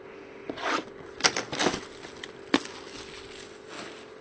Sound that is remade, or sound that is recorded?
recorded